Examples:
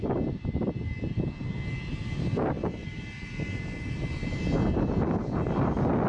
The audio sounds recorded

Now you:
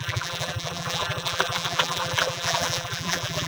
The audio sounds remade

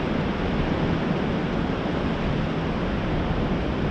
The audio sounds recorded